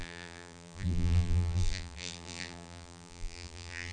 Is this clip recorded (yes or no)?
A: no